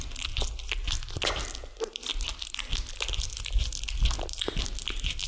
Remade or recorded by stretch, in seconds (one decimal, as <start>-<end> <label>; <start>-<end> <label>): 0.0-5.3 recorded